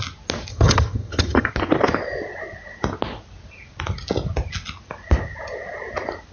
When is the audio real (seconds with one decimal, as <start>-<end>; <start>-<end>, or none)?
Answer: 0.0-0.5; 1.5-6.3